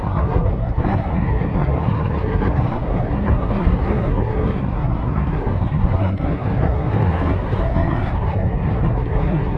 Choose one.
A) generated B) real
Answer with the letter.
A